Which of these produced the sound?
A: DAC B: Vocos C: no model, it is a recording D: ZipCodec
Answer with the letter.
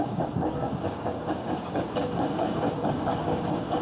A